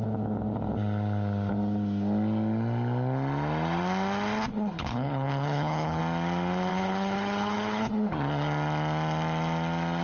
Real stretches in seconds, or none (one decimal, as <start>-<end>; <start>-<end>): 0.0-4.5; 6.0-6.7; 7.9-10.0